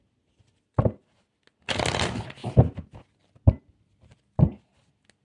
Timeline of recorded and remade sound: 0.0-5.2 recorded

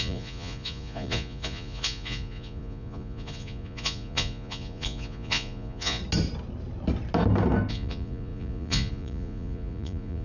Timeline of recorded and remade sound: 0.0-6.0 remade; 6.0-7.7 recorded; 7.7-10.2 remade

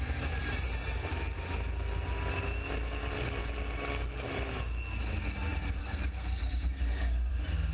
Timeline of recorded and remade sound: 0.0-5.8 recorded; 5.8-7.3 remade; 7.3-7.7 recorded

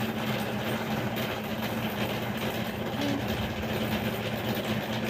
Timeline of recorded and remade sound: 0.0-5.1 recorded

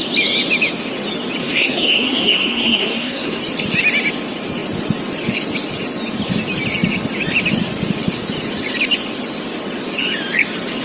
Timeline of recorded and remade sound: 0.0-1.4 recorded; 1.4-3.4 remade; 3.4-10.8 recorded